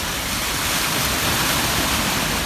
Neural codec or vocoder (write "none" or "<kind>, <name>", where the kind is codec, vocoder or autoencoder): none